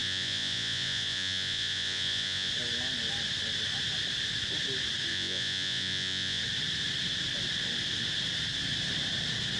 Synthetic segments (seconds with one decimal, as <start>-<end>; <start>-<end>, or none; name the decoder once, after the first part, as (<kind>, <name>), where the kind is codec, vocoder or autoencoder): 0.0-2.5 (vocoder, Vocos); 5.1-6.4